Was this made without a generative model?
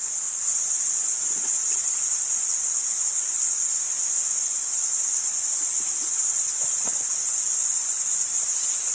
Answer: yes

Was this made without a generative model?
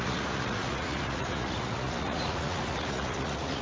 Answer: no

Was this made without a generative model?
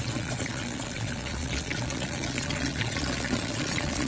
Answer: no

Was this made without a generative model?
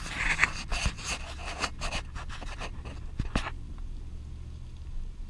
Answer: yes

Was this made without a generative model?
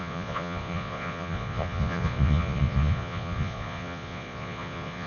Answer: no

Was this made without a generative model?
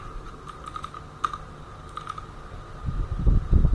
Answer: yes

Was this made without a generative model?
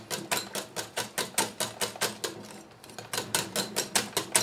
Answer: yes